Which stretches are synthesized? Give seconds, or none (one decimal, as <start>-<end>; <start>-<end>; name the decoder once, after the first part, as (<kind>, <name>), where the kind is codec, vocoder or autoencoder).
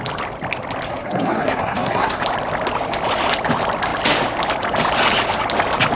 0.9-2.2 (codec, SNAC)